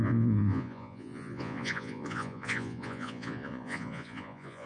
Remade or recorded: remade